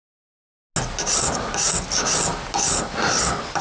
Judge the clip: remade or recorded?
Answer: recorded